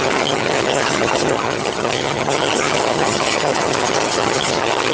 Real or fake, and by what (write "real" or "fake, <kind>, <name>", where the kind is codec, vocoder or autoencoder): fake, vocoder, HiFi-GAN